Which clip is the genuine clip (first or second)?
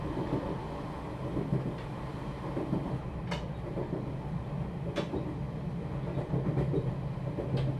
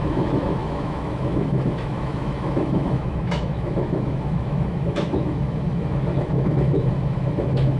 first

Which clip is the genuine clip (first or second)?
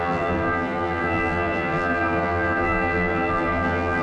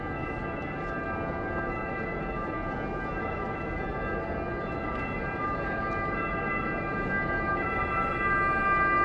second